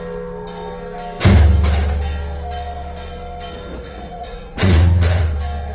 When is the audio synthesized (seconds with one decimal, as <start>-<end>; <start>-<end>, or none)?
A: 3.7-5.3